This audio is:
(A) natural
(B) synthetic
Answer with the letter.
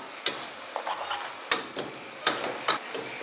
A